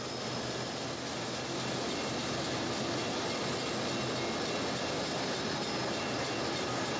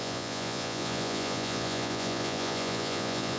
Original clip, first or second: first